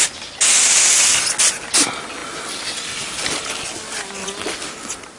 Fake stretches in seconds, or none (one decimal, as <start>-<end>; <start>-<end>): none